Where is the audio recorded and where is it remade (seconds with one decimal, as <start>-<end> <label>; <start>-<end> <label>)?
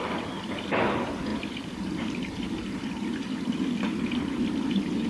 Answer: 0.0-5.1 recorded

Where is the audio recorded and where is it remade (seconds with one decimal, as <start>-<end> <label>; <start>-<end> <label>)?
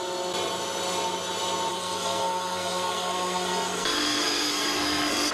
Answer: 0.0-1.7 recorded; 1.7-5.3 remade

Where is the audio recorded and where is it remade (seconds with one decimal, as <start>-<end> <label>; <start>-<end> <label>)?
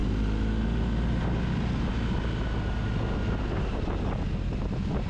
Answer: 0.0-5.1 recorded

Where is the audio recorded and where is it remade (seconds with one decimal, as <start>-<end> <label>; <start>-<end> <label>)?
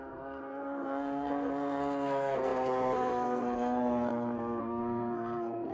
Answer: 0.0-5.7 remade